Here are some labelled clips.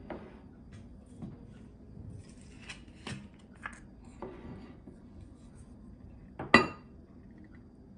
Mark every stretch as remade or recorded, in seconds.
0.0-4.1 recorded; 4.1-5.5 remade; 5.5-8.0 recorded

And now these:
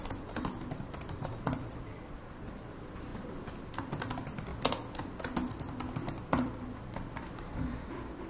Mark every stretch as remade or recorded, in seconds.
0.0-4.5 remade; 4.5-5.8 recorded; 5.8-8.3 remade

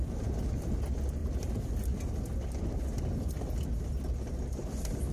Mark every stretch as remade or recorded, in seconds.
0.0-1.2 recorded; 1.2-1.7 remade; 1.7-5.1 recorded

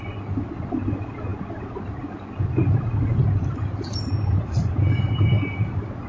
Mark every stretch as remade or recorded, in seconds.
0.0-6.1 recorded

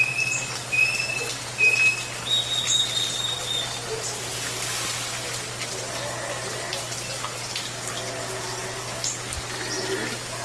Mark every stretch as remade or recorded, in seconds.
0.0-10.4 recorded

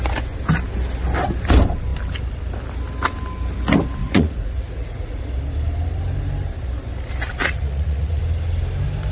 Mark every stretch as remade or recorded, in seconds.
0.0-4.0 recorded; 4.0-5.2 remade; 5.2-7.4 recorded; 7.4-8.2 remade; 8.2-9.1 recorded

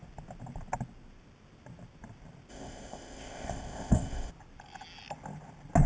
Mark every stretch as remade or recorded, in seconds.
0.0-2.5 recorded; 2.5-4.3 remade; 4.3-5.9 recorded